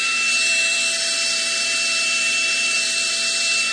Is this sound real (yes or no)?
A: no